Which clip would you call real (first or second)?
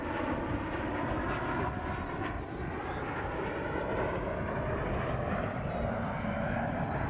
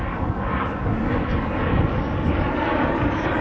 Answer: first